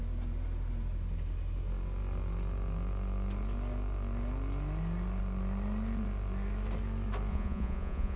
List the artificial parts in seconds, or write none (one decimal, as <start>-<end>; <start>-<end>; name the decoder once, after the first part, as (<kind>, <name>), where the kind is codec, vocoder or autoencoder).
7.3-8.2 (vocoder, Vocos)

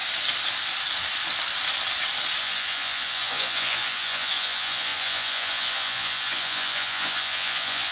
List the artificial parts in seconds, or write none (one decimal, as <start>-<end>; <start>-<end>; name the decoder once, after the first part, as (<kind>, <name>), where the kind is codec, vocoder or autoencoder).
2.4-7.9 (vocoder, Vocos)

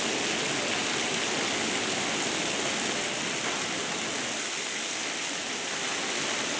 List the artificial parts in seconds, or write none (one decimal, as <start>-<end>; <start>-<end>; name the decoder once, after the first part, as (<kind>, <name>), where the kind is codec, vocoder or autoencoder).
none

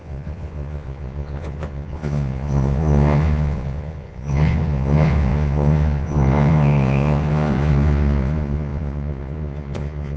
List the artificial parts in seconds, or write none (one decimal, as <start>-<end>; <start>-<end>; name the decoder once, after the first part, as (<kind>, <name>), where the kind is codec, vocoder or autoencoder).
0.0-10.2 (vocoder, Vocos)

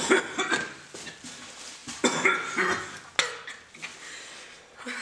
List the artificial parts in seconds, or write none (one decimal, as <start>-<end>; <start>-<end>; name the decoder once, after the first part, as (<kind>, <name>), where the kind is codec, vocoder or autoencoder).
none

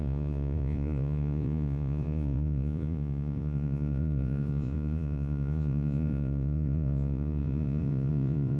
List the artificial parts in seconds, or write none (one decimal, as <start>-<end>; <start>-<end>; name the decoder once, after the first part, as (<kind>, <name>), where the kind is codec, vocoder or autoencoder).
0.0-8.6 (vocoder, Vocos)